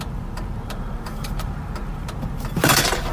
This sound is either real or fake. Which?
fake